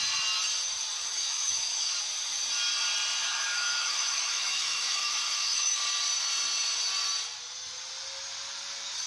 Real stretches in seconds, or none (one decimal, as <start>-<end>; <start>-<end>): 0.0-1.0; 1.9-3.2; 5.8-9.1